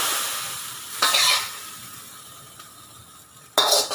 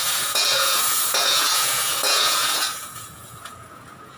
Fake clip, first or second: second